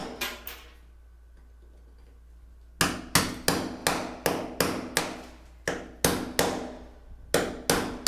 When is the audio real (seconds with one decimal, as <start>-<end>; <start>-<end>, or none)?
0.0-8.1